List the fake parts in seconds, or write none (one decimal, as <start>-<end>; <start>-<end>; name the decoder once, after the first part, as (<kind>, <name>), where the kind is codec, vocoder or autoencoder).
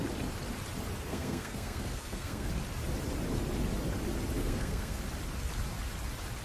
1.1-2.5 (codec, SNAC); 4.4-5.0